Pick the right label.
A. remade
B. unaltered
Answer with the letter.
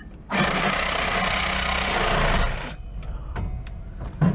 B